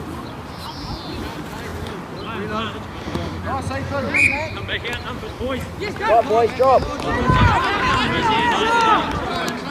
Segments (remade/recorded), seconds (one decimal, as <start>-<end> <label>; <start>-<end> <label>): 0.0-9.7 recorded